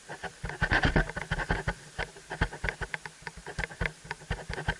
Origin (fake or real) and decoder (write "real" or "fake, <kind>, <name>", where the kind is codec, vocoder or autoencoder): real